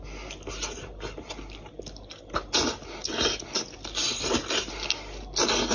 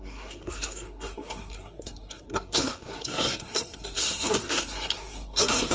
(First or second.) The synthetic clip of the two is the second